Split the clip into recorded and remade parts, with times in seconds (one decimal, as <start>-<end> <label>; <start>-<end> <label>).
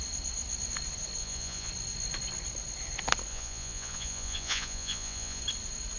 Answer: 0.0-1.2 recorded; 1.2-1.7 remade; 1.7-3.3 recorded; 3.3-5.4 remade; 5.4-6.0 recorded